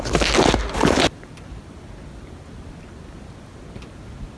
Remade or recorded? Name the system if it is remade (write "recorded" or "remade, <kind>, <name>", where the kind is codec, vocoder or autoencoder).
recorded